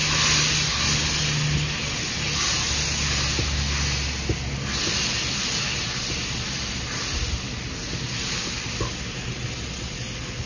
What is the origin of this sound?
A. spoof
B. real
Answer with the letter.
B